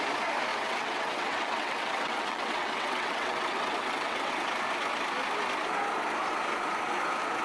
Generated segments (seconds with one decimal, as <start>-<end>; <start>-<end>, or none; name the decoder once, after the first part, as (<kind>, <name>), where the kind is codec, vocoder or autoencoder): 0.5-4.3 (vocoder, WaveNeXt)